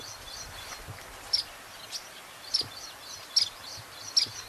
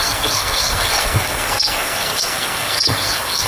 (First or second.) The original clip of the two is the first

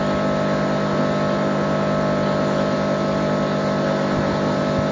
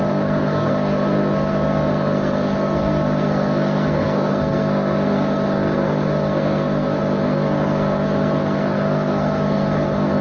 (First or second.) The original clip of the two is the first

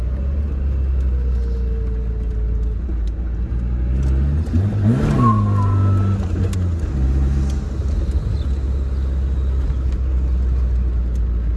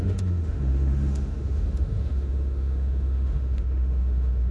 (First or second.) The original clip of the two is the first